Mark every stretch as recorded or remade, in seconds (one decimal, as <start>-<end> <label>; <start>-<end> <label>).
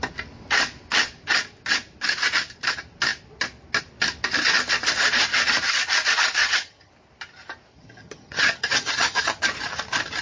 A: 0.0-6.4 recorded; 6.4-6.9 remade; 6.9-7.7 recorded; 7.7-9.4 remade; 9.4-10.2 recorded